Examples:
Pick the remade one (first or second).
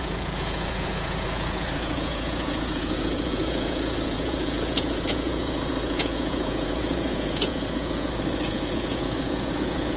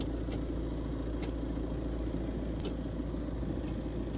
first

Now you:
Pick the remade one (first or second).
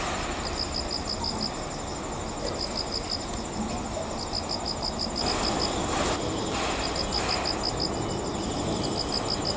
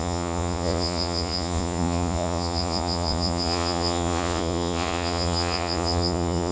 second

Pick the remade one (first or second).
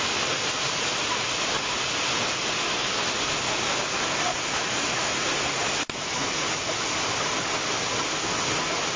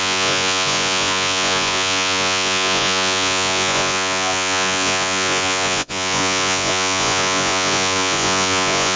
second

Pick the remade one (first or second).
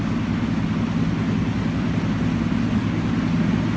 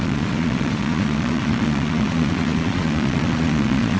second